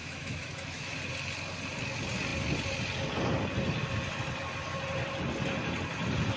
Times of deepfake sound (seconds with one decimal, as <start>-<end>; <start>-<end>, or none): 0.0-0.9